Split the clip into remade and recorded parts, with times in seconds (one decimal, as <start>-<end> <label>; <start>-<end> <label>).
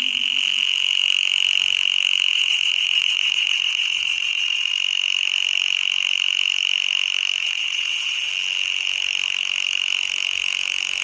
0.0-2.3 recorded; 2.3-4.7 remade; 4.7-7.4 recorded; 7.4-8.3 remade; 8.3-11.0 recorded